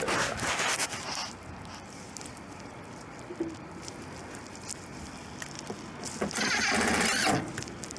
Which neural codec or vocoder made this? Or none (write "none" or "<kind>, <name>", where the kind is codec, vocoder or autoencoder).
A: none